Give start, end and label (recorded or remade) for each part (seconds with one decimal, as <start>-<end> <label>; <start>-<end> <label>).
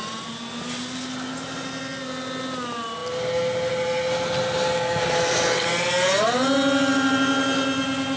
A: 0.0-8.2 recorded